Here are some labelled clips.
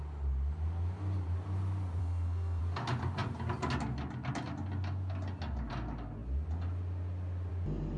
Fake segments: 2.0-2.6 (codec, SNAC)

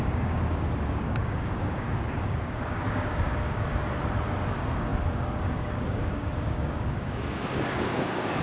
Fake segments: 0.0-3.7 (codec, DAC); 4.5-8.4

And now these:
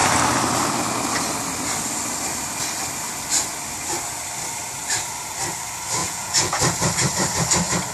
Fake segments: 6.0-6.6 (vocoder, Vocos)

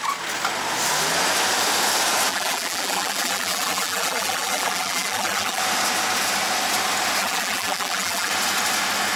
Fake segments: 2.3-5.6 (vocoder, BigVGAN v2); 7.2-8.3

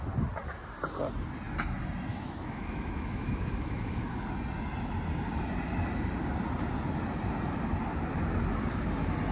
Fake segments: 2.1-4.2 (autoencoder, DAC-VAE)

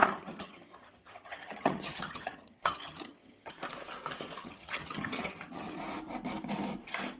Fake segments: 0.0-3.5 (vocoder, HiFi-GAN); 4.4-5.8

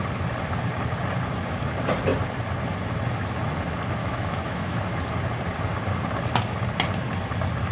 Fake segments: 4.0-4.8 (autoencoder, DAC-VAE)